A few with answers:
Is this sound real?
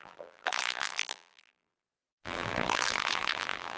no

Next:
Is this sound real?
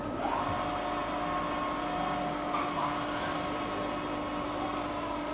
yes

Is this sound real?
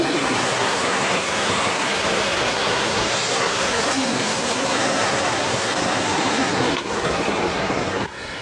no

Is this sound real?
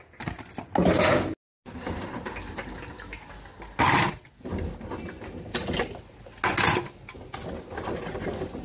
yes